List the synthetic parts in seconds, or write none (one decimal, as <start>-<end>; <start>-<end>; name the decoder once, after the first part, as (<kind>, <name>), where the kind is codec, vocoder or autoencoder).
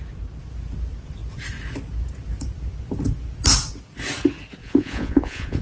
4.6-5.6 (vocoder, Vocos)